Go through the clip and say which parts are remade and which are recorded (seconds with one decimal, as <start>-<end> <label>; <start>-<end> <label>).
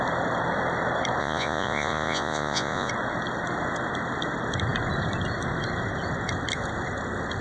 0.0-1.2 recorded; 1.2-2.9 remade; 2.9-7.4 recorded